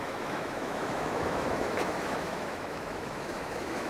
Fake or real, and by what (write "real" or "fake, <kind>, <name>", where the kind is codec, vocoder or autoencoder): fake, autoencoder, DAC-VAE